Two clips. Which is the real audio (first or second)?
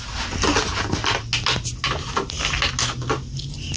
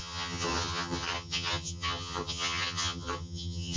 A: first